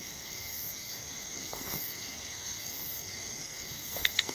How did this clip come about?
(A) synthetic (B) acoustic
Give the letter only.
A